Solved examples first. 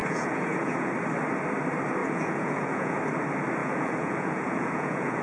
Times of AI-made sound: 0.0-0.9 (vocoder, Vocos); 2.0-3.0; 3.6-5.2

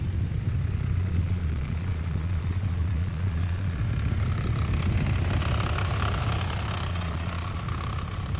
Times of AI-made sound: 1.0-3.8 (vocoder, Vocos); 6.9-7.6

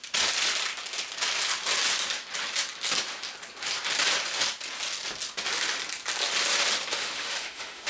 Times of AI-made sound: 6.9-7.9 (autoencoder, DAC-VAE)